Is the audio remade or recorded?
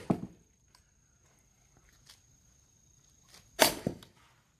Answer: recorded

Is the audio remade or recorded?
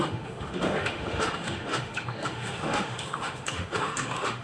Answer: remade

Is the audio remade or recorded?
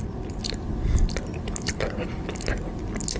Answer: recorded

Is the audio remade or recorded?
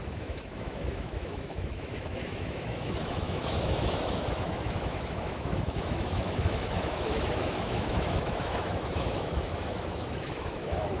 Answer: remade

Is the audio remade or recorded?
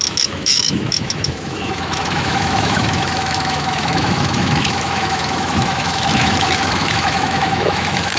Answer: remade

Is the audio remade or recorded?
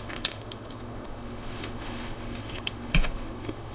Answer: remade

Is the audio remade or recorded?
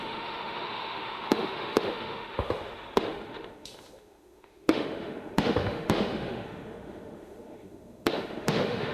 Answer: remade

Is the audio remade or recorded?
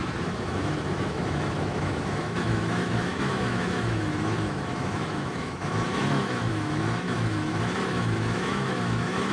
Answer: remade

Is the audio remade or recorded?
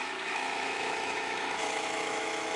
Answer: remade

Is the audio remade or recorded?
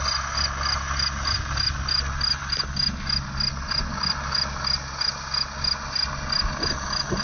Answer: recorded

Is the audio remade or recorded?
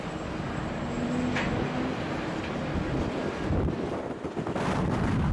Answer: recorded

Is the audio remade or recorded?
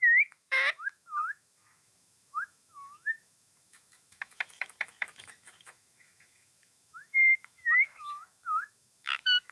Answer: remade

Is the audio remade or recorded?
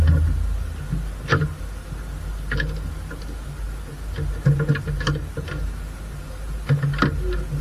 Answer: recorded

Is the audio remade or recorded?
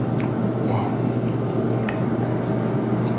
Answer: recorded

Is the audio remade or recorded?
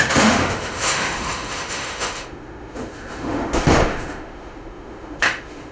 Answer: remade